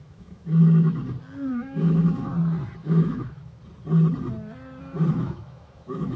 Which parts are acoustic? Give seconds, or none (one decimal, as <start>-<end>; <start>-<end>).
1.0-1.5; 2.3-2.8; 3.6-5.1